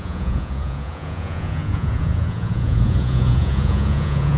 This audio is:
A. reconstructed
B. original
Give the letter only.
A